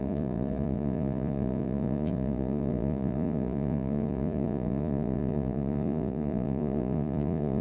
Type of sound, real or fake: fake